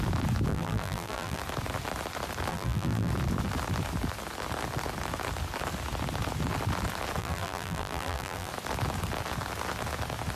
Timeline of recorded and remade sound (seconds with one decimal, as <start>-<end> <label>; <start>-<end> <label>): 0.0-0.5 recorded; 0.5-1.4 remade; 1.4-2.5 recorded; 2.5-3.1 remade; 3.1-7.2 recorded; 7.2-8.5 remade; 8.5-10.4 recorded